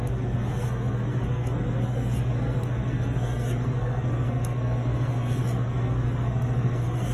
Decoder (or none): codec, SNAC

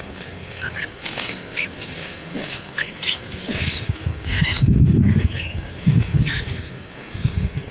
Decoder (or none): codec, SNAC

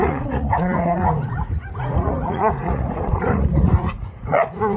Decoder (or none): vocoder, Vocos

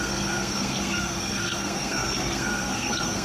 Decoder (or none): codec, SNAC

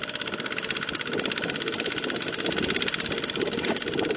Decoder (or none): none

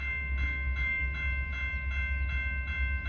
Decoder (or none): none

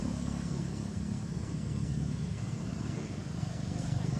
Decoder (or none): codec, SNAC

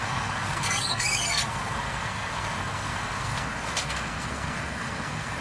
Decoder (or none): codec, SNAC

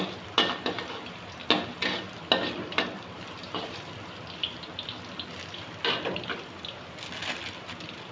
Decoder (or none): none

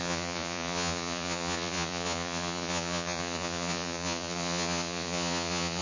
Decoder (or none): vocoder, Vocos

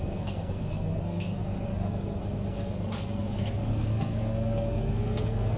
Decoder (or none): codec, SNAC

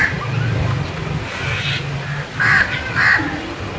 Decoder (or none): none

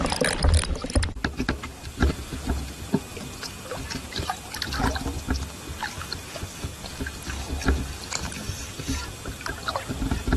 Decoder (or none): none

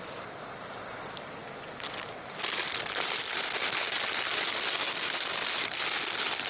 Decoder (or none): none